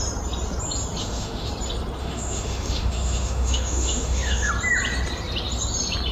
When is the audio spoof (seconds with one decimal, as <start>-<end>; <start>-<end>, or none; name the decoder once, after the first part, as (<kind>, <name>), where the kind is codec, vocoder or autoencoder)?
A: 1.0-1.5 (autoencoder, DAC-VAE); 2.0-4.5